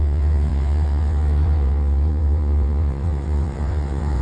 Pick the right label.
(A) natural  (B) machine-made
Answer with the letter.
B